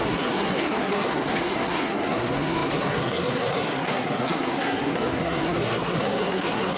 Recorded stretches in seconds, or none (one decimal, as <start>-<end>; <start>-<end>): none